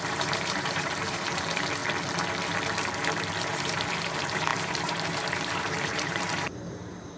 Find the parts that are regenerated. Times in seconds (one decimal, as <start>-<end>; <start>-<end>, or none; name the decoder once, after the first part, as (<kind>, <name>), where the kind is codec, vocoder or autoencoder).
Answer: 0.0-1.8 (vocoder, BigVGAN v2); 3.5-7.2